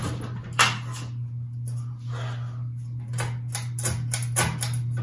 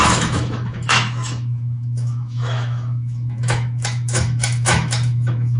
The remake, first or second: second